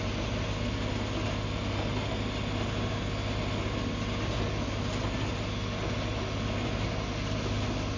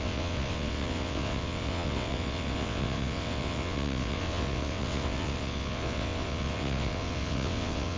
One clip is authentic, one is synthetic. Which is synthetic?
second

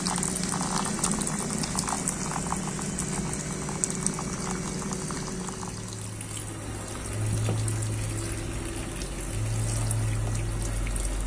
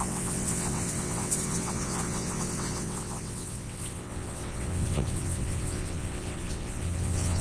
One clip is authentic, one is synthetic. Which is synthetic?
second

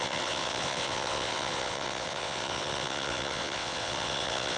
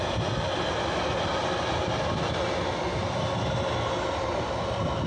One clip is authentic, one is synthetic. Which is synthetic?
first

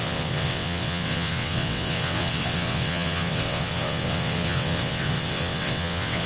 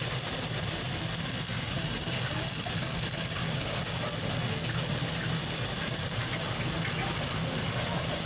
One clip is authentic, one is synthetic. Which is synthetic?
first